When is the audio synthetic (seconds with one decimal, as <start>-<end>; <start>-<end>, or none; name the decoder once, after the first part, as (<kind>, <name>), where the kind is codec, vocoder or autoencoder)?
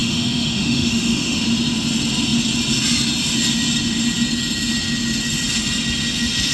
0.0-1.4 (autoencoder, DAC-VAE)